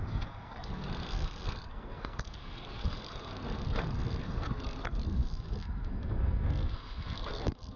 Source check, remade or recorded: remade